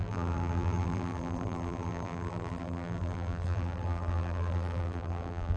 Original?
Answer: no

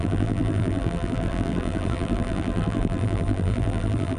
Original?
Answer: no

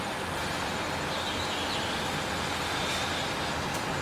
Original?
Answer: yes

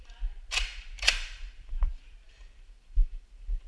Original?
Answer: no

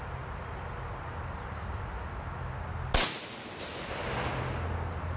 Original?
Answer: yes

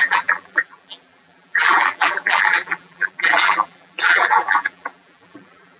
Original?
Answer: no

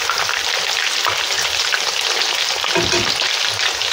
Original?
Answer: yes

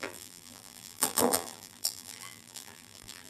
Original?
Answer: no